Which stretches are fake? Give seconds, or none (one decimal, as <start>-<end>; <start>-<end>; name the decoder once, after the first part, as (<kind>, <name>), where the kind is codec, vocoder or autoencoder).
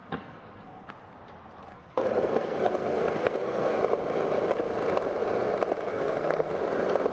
0.0-0.9 (codec, SNAC); 1.7-3.8; 5.9-6.5